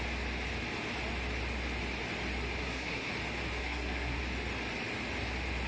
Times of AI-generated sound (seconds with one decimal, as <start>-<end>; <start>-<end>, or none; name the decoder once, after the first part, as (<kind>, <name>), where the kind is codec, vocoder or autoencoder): 2.6-3.1 (codec, SNAC); 3.6-4.2